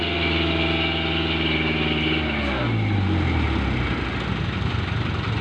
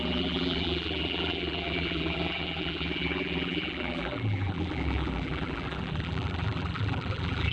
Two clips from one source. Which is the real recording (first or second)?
first